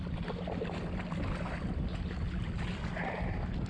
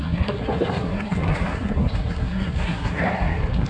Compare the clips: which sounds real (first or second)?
first